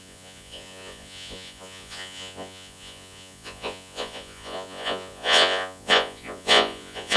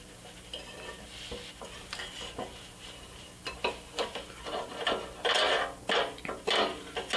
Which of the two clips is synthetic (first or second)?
first